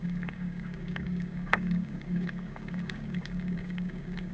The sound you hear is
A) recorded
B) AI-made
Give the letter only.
B